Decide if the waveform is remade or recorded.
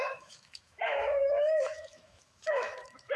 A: remade